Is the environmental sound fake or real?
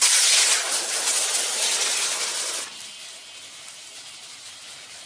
real